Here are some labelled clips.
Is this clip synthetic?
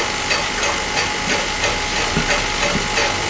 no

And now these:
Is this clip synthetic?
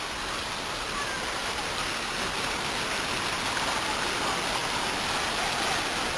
no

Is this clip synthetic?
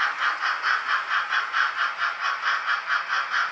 no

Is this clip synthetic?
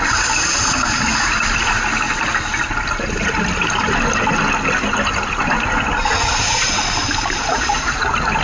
no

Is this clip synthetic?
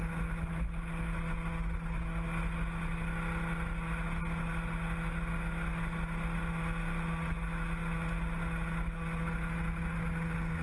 no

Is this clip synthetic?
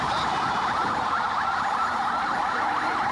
yes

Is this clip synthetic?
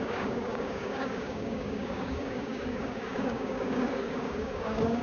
yes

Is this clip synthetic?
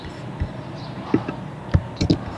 no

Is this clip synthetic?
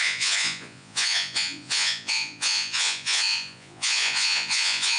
yes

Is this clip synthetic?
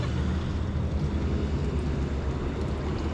no